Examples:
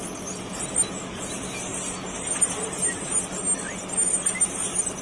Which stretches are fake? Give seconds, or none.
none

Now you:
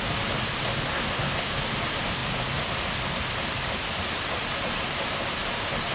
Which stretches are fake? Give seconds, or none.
0.9-1.5 (codec, SNAC)

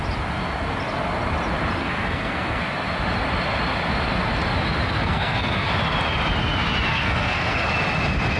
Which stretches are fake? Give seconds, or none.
1.8-2.6 (codec, SNAC); 5.0-5.7; 6.9-7.7

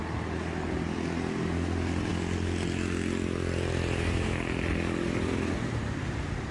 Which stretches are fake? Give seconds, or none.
none

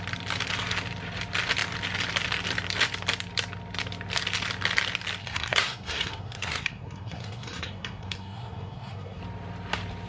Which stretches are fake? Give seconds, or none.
5.2-9.2 (codec, SNAC)

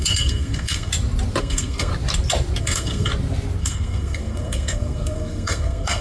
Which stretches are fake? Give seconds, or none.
0.0-0.9 (codec, SNAC); 1.4-1.9; 2.6-3.1; 3.6-6.0

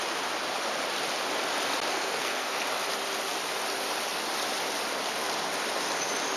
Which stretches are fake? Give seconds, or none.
1.9-2.6 (codec, SNAC)